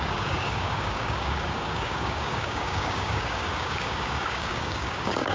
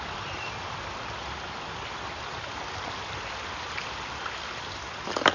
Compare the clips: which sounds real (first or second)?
second